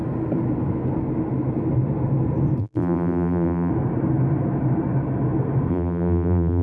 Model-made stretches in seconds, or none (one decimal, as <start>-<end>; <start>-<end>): 2.6-3.7; 5.7-6.6